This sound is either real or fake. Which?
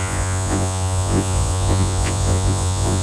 fake